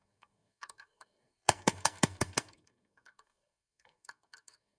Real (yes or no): no